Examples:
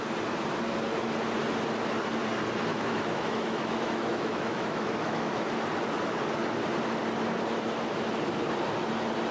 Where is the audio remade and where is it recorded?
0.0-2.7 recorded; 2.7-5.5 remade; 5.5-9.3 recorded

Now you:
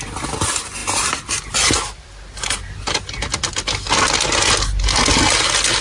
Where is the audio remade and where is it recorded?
0.0-5.8 recorded

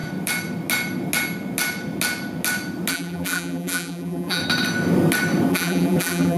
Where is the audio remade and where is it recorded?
0.0-2.9 recorded; 2.9-4.4 remade; 4.4-5.5 recorded; 5.5-6.4 remade

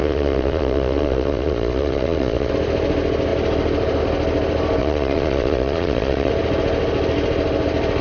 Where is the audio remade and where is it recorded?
0.0-2.5 remade; 2.5-4.8 recorded; 4.8-6.3 remade; 6.3-8.0 recorded